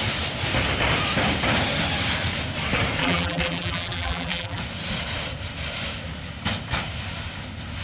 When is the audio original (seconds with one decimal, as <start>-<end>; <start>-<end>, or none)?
0.0-3.0; 4.6-7.8